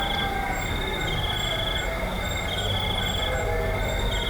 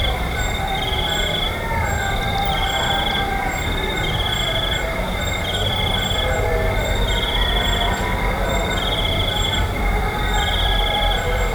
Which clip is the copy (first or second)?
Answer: second